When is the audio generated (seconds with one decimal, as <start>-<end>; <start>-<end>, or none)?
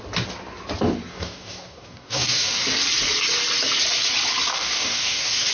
1.1-2.6; 4.5-5.5